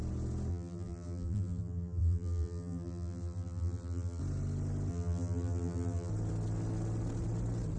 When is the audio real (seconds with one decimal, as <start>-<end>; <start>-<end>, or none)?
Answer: 0.0-0.5; 4.2-4.9; 6.1-7.8